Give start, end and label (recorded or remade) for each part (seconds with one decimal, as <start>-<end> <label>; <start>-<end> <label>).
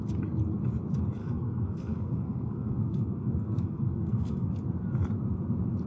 0.0-1.2 recorded; 1.2-4.5 remade; 4.5-5.9 recorded